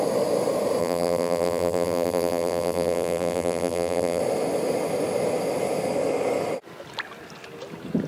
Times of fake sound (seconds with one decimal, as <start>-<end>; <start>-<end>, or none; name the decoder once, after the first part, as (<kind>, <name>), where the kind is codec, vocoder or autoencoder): 0.8-4.2 (vocoder, BigVGAN v2)